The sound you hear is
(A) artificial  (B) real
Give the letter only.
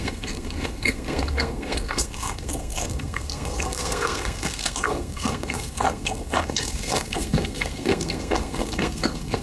A